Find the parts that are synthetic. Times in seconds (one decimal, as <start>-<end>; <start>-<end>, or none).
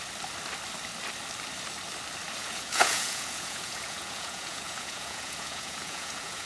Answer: 2.4-6.5